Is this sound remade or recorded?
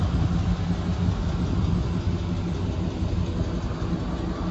recorded